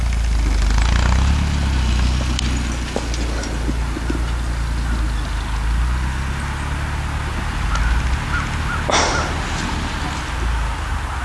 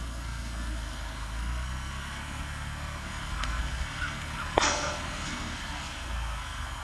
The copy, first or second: second